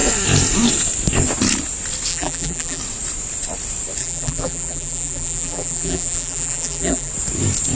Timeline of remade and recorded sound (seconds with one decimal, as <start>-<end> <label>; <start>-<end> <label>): 0.0-2.1 recorded; 2.1-2.8 remade; 2.8-4.0 recorded; 4.0-7.1 remade; 7.1-7.8 recorded